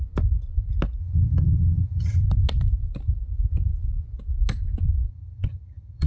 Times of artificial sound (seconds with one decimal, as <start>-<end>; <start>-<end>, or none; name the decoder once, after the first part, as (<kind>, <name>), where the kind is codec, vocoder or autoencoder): 1.0-2.2 (vocoder, HiFi-GAN); 5.1-6.1